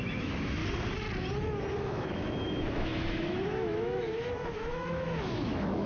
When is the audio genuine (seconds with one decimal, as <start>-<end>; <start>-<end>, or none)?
0.6-1.8